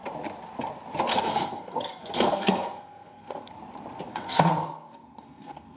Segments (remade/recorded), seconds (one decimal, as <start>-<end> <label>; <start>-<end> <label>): 0.0-1.1 recorded; 1.1-3.5 remade; 3.5-4.1 recorded; 4.1-5.8 remade